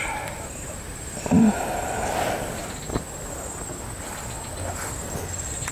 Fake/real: real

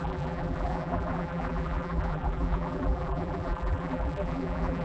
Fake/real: fake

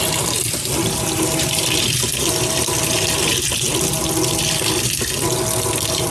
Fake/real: real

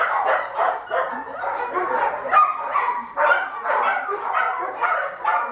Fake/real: fake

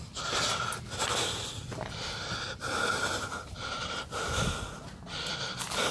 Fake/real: real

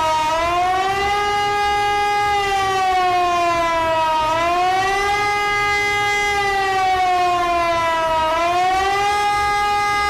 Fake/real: real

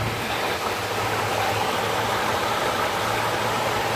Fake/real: real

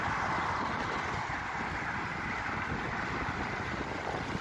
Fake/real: real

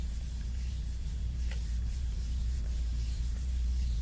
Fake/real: fake